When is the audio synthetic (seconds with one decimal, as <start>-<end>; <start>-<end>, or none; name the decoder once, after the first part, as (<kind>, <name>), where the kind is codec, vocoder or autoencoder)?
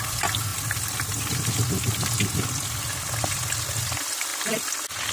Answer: none